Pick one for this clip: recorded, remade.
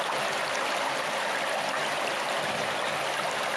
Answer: recorded